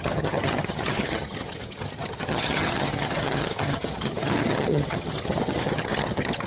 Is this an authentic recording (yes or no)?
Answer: no